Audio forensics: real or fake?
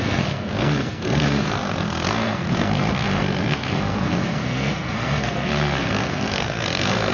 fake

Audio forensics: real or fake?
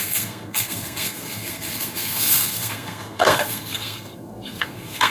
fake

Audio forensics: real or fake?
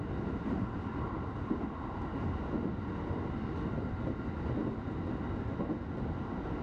real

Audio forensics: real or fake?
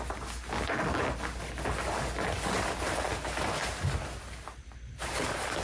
real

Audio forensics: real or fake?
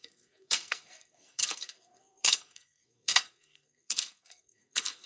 fake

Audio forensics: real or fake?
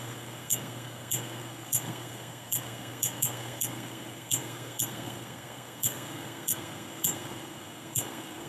fake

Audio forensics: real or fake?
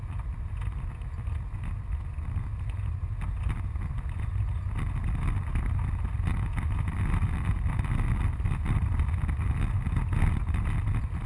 real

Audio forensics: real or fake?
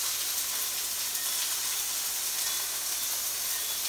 real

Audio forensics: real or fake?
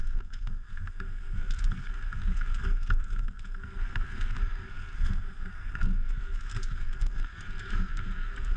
fake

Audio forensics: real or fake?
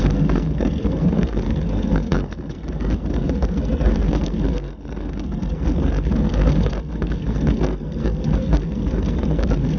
fake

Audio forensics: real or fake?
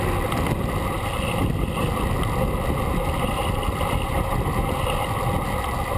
real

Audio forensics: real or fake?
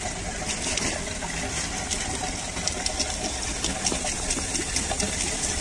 real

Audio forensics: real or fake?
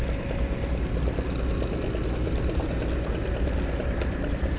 real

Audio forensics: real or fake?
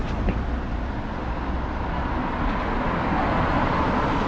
real